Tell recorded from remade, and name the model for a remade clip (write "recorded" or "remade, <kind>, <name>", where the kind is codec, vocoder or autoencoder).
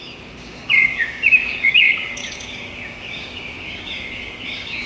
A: remade, codec, DAC